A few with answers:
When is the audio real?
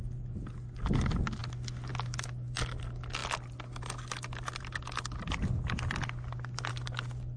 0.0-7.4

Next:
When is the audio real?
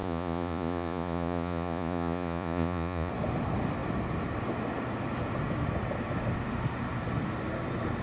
3.1-8.0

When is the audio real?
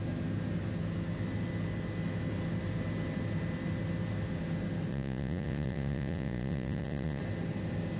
0.0-4.9; 7.2-8.0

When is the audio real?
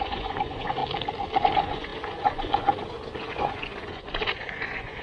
0.8-1.4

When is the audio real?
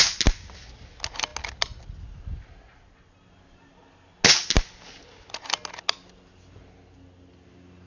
0.0-7.9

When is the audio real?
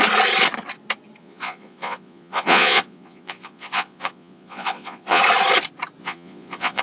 0.0-1.2; 5.2-6.0